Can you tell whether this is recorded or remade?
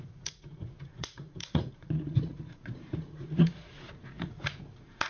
remade